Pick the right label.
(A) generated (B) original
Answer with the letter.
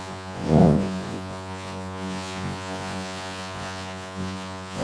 A